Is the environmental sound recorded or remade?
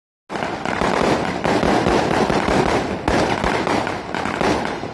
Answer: recorded